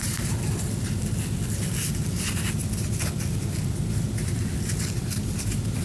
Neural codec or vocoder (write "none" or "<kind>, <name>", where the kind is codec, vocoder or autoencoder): none